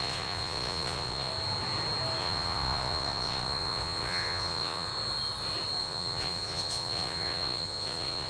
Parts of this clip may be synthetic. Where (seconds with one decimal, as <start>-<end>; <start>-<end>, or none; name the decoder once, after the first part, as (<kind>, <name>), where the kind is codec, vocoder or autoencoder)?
0.0-1.3 (vocoder, Vocos); 2.2-4.9; 5.8-8.3